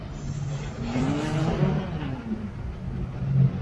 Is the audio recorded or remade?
recorded